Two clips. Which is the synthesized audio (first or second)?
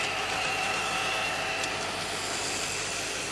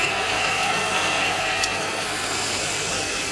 second